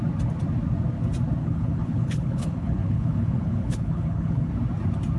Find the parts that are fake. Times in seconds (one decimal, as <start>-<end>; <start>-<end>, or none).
1.4-4.5